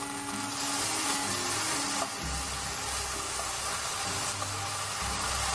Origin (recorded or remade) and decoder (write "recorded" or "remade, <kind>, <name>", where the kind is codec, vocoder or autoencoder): recorded